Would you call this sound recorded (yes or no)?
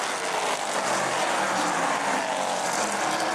yes